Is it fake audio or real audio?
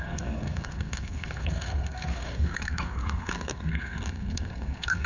fake